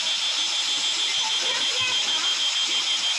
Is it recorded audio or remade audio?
recorded